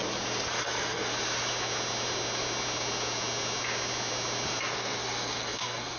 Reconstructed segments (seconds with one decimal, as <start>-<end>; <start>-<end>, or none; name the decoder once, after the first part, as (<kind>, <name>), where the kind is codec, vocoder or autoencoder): 0.6-1.1 (codec, SNAC); 4.7-6.0